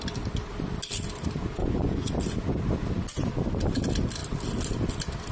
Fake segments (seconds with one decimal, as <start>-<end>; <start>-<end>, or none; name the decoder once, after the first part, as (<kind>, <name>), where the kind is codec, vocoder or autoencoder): 1.6-2.1 (vocoder, Vocos)